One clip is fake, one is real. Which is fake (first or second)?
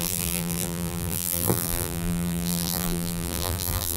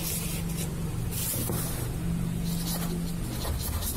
first